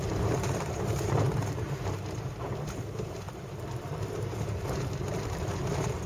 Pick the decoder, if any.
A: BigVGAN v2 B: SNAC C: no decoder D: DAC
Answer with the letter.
A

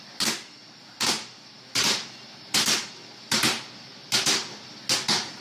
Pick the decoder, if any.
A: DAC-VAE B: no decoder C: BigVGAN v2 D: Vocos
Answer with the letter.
B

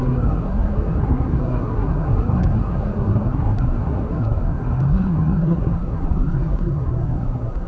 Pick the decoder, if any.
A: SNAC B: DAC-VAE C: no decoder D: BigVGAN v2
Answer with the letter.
A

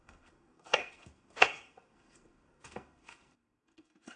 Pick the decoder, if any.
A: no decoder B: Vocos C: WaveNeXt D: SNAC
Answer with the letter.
D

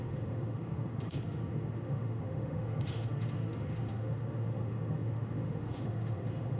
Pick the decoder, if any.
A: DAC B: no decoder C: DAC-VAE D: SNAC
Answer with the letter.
C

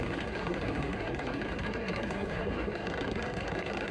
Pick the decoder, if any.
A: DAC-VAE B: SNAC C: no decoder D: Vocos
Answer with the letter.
B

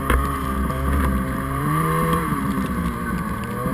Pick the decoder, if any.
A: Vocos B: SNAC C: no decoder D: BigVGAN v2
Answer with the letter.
D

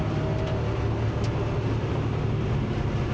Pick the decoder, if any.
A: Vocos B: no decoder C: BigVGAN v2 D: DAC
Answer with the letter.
B